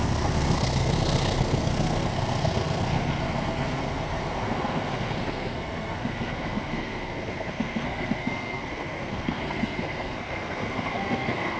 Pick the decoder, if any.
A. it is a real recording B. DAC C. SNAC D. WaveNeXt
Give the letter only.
C